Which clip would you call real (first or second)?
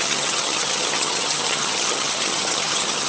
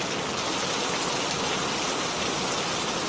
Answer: second